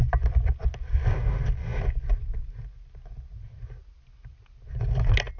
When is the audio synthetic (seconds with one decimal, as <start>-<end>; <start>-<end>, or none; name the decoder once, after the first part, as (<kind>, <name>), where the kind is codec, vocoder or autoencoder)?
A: none